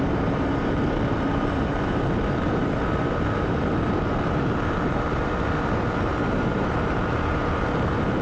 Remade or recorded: remade